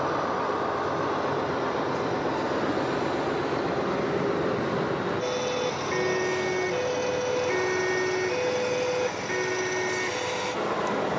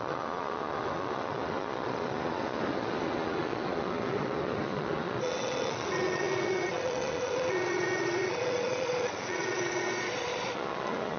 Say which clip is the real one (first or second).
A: first